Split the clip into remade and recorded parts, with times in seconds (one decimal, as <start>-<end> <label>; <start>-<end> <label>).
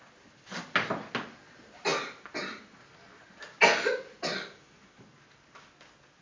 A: 0.0-6.2 recorded